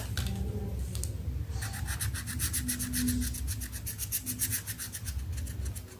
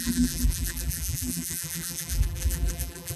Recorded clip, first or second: first